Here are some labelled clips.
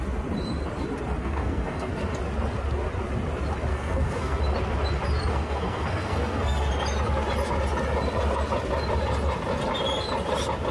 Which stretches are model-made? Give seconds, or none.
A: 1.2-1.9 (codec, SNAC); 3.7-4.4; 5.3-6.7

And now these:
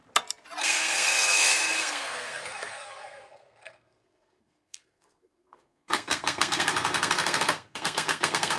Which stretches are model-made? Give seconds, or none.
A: 0.6-8.6 (codec, SNAC)

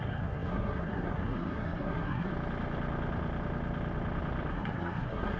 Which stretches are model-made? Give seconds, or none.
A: 0.0-2.3 (codec, SNAC); 4.5-5.4

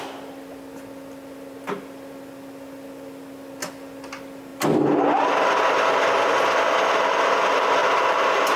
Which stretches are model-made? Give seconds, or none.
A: none

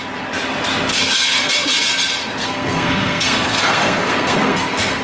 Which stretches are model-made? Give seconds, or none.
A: 0.9-1.5 (codec, SNAC); 2.4-5.0

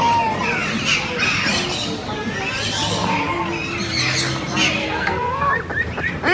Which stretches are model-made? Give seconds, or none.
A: 4.8-5.5 (codec, SNAC)

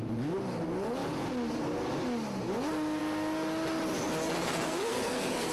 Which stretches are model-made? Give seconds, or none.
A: 4.2-5.5 (codec, SNAC)